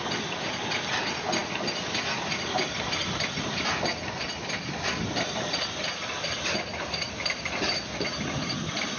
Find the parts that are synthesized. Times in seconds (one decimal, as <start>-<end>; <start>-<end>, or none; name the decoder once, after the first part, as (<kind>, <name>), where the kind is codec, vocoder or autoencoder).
none